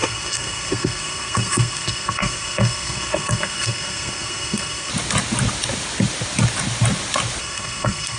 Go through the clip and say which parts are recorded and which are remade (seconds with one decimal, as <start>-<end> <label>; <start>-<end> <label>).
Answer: 0.0-4.9 remade; 4.9-7.4 recorded; 7.4-8.2 remade